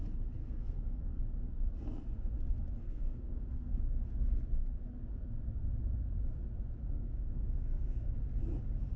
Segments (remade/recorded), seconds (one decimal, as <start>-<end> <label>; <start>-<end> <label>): 0.0-0.4 recorded; 0.4-1.2 remade; 1.2-2.8 recorded; 2.8-3.8 remade; 3.8-6.8 recorded; 6.8-8.1 remade; 8.1-9.0 recorded